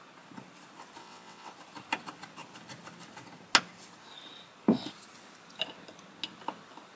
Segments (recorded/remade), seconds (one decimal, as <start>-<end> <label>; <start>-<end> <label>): 0.0-1.0 recorded; 1.0-1.5 remade; 1.5-7.0 recorded